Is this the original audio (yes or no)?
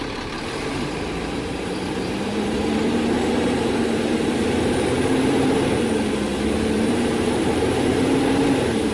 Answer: no